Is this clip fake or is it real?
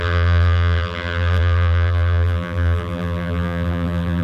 fake